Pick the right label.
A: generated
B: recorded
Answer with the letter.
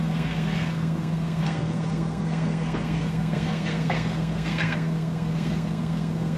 A